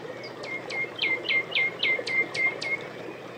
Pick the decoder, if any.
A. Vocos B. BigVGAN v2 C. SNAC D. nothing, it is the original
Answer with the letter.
B